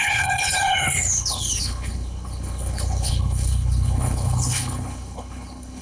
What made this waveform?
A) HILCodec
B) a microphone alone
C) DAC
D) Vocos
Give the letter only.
A